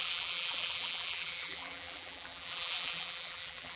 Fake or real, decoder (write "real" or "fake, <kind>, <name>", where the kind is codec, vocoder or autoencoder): fake, vocoder, BigVGAN v2